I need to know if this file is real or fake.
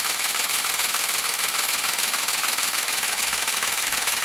fake